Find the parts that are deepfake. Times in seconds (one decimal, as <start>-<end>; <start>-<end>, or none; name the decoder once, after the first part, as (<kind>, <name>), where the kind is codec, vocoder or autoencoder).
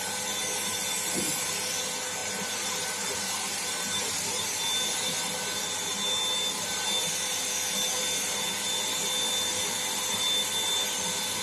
2.2-4.4 (vocoder, BigVGAN v2)